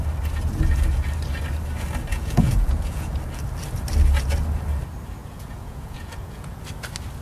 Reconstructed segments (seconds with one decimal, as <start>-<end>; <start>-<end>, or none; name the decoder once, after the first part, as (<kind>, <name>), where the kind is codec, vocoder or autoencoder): 2.1-3.2 (vocoder, Vocos); 5.2-6.6